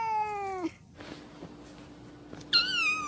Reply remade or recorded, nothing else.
recorded